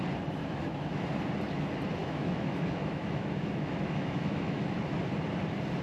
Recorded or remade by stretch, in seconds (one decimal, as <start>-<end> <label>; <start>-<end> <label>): 0.0-0.4 recorded; 0.4-1.0 remade; 1.0-2.0 recorded; 2.0-4.8 remade; 4.8-5.8 recorded